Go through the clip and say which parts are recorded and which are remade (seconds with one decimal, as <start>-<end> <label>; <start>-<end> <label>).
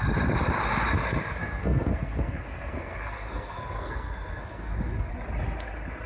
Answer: 0.0-1.4 recorded; 1.4-5.1 remade; 5.1-6.1 recorded